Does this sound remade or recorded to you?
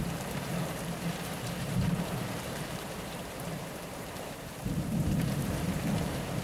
remade